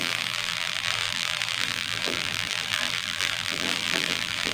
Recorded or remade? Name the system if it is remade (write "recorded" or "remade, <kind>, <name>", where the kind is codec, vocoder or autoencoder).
remade, vocoder, BigVGAN v2